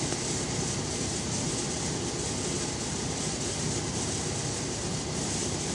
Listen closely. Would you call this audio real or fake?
real